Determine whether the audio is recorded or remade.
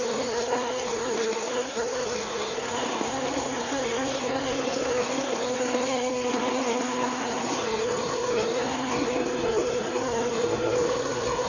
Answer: remade